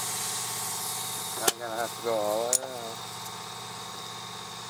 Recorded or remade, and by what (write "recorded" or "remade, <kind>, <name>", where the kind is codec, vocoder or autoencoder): recorded